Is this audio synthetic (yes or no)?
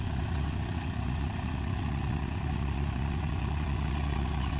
yes